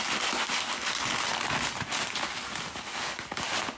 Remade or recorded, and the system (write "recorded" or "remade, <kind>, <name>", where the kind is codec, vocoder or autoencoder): recorded